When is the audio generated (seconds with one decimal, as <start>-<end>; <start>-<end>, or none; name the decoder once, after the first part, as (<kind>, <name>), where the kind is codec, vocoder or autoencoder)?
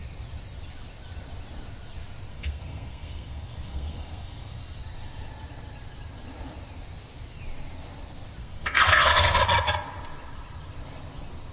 2.3-4.6 (codec, SNAC); 8.4-9.4